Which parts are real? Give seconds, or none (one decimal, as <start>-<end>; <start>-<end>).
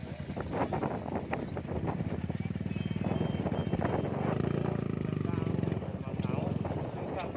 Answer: 0.0-7.4